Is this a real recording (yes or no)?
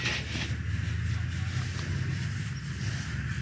yes